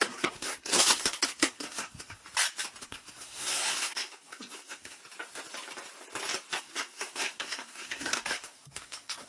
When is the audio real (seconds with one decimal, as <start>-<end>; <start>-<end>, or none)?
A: 2.2-2.8; 5.0-6.6